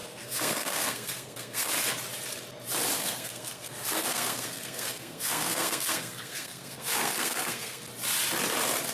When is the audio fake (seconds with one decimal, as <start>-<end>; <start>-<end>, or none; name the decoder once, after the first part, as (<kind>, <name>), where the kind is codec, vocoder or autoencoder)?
0.0-1.7 (codec, SNAC); 3.0-7.8